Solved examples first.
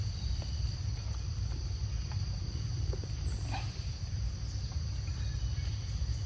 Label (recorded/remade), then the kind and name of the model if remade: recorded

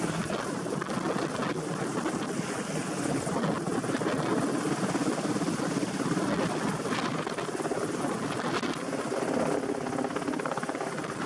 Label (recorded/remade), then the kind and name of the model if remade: recorded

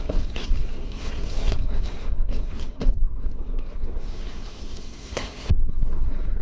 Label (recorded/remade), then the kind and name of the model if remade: remade, codec, SNAC